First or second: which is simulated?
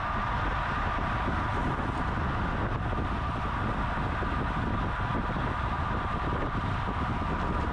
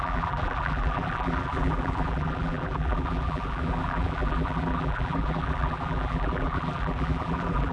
second